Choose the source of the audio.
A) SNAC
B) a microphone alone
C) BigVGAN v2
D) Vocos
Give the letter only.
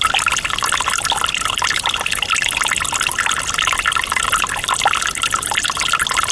B